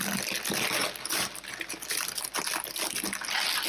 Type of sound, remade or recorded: recorded